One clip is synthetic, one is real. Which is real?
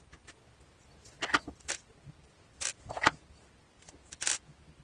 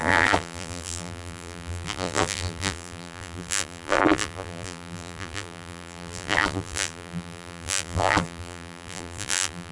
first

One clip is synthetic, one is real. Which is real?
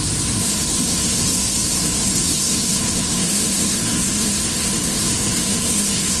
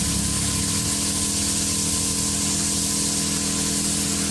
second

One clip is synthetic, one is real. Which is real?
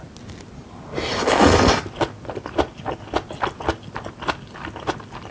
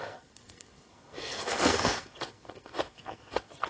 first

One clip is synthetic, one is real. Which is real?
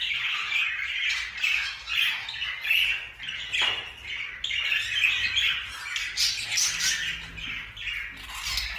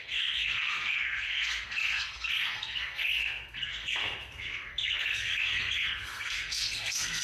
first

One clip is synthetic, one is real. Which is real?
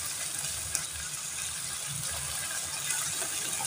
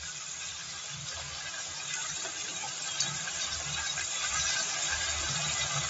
first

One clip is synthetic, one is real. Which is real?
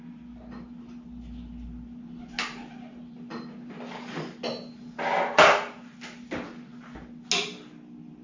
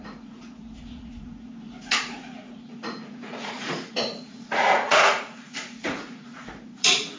first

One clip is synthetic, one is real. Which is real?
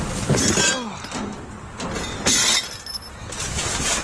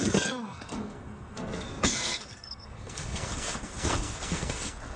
first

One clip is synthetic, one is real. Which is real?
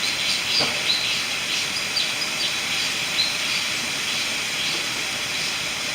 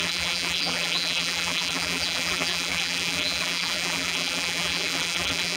first